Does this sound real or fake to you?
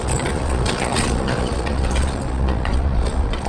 fake